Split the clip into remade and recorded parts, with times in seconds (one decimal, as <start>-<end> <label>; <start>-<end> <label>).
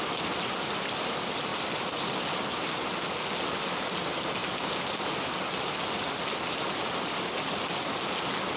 0.0-8.6 recorded